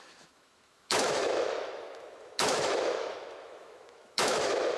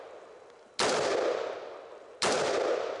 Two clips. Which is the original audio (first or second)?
second